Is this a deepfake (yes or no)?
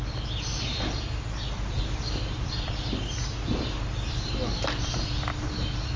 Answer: no